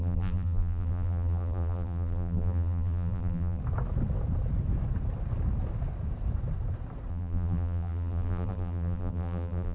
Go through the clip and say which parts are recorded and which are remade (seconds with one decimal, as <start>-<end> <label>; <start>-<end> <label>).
0.0-3.6 remade; 3.6-7.1 recorded; 7.1-9.7 remade